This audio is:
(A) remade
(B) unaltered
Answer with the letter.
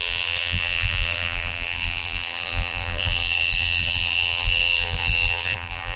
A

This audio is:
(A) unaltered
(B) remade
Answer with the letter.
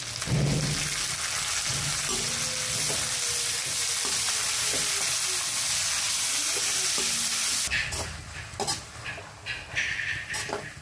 A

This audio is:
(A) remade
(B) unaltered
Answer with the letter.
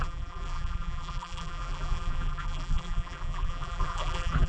A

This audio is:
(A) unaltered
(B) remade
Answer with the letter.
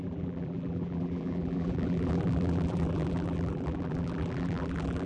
B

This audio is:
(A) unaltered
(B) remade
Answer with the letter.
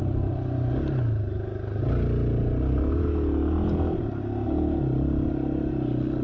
A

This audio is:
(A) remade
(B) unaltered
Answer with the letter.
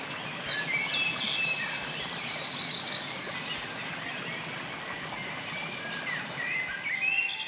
B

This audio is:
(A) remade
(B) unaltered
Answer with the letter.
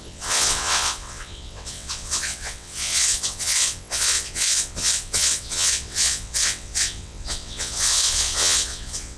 A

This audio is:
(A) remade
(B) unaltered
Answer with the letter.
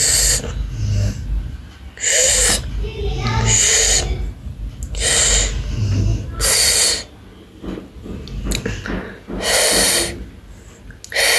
B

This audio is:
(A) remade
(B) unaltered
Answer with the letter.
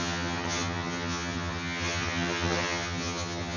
A